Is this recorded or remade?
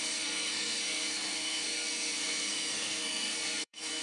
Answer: remade